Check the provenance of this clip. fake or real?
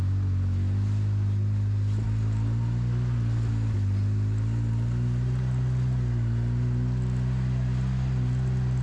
real